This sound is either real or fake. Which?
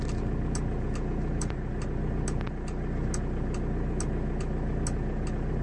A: real